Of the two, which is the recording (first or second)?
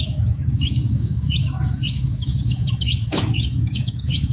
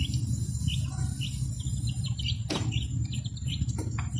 second